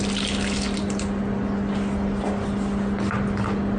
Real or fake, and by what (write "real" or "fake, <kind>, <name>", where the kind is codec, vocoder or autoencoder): real